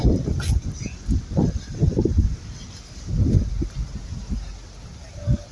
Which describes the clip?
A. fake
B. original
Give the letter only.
B